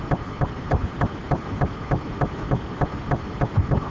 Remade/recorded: recorded